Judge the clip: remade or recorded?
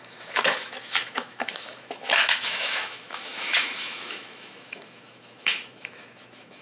remade